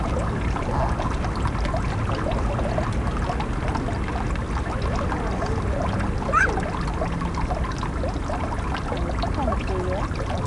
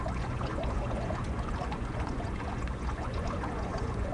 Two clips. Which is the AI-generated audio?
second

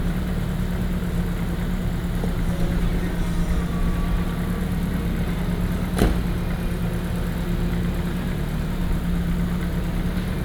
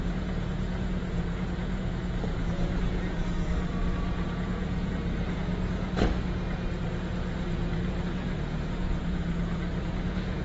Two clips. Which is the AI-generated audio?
second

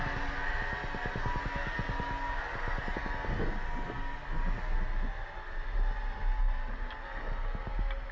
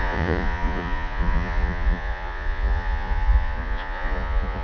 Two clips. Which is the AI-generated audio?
second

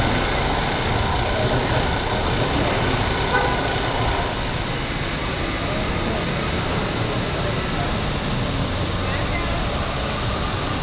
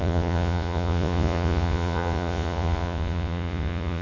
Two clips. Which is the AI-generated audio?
second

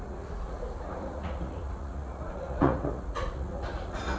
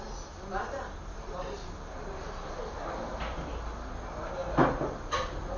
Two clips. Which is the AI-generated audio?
first